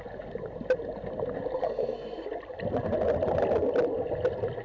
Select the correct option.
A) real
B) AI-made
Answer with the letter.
A